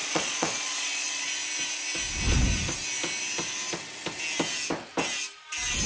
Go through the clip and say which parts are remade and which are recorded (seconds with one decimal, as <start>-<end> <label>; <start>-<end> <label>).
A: 0.0-1.3 remade; 1.3-5.9 recorded